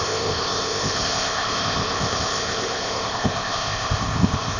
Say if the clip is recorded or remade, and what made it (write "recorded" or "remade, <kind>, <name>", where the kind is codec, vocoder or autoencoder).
remade, codec, ZipCodec